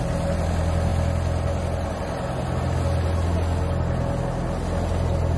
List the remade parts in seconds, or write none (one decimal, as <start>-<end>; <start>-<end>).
none